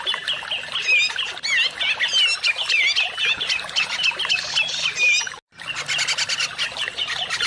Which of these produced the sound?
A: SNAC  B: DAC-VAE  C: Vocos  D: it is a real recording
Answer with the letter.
D